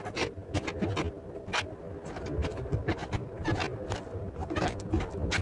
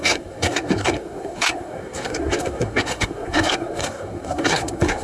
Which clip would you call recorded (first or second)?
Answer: first